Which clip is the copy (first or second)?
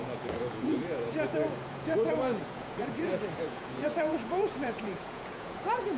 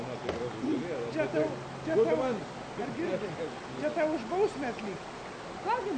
first